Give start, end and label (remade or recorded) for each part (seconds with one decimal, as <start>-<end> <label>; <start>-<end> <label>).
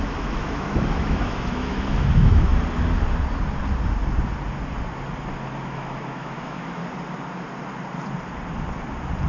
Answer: 0.0-2.5 remade; 2.5-5.6 recorded; 5.6-6.8 remade; 6.8-9.3 recorded